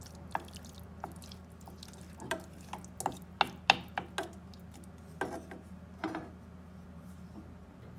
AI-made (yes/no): no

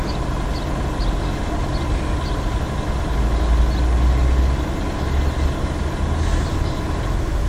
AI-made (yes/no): no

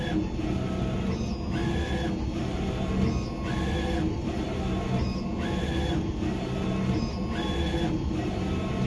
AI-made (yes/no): no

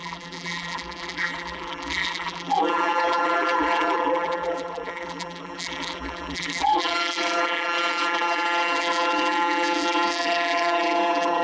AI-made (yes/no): yes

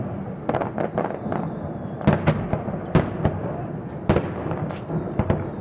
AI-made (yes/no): no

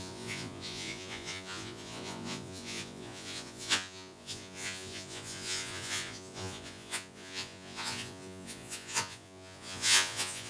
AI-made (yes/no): yes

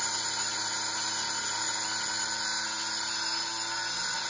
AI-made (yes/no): no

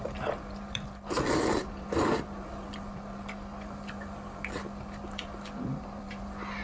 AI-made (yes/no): no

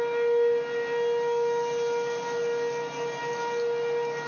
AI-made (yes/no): no